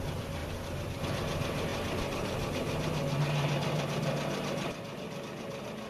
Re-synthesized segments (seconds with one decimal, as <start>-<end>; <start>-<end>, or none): 0.0-0.4; 1.0-1.7; 5.2-5.9